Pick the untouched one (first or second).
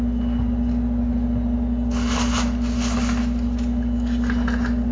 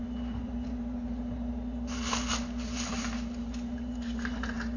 first